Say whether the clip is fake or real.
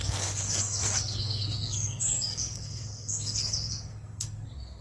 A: fake